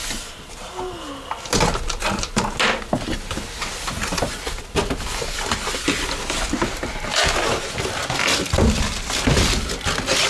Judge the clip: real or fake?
real